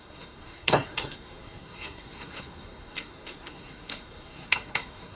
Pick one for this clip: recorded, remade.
remade